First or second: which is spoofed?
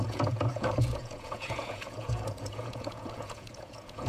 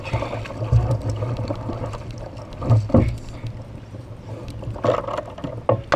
first